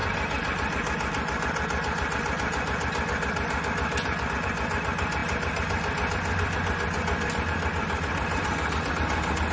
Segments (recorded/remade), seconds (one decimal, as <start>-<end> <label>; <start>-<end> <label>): 0.0-9.5 recorded